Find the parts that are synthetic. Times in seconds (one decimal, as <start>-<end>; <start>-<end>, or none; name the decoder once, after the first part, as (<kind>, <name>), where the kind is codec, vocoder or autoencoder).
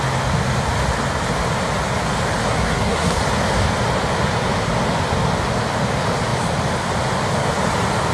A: 2.4-3.2 (codec, SNAC)